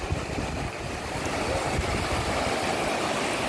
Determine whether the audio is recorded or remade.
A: recorded